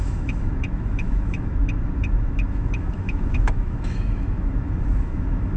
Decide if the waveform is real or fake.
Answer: fake